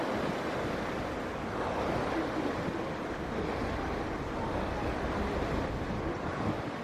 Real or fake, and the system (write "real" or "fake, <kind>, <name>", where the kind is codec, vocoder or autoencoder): real